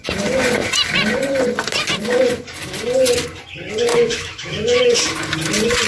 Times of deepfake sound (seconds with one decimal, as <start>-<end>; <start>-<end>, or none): 3.9-5.0